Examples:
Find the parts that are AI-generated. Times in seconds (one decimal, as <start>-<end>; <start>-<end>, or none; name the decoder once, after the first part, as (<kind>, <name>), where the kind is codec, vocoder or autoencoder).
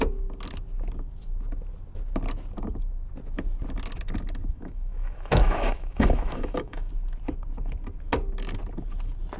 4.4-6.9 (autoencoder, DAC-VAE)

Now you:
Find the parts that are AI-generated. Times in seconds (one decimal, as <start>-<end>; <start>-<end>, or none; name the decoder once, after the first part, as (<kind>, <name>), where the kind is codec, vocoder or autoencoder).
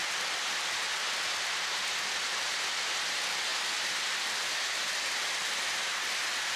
none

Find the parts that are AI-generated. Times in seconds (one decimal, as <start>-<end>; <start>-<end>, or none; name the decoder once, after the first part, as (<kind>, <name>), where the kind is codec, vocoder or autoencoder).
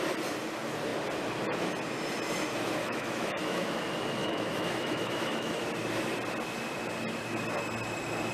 2.8-3.8 (autoencoder, DAC-VAE); 4.2-5.6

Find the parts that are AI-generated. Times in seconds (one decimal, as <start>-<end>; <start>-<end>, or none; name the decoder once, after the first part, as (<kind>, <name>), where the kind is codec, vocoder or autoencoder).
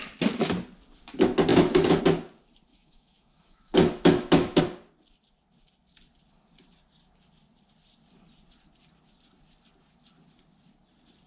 1.5-2.0 (autoencoder, DAC-VAE); 2.7-4.6